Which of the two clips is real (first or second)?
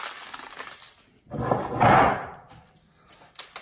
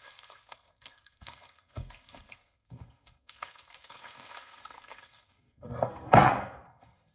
first